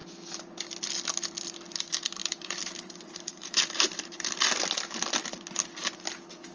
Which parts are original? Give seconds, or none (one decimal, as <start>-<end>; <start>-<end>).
0.0-2.2; 4.4-6.5